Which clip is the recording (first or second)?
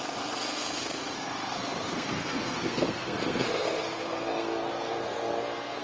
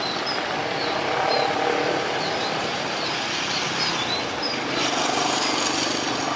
second